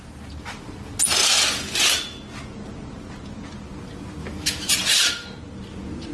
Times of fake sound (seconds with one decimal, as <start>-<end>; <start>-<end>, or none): 4.2-4.7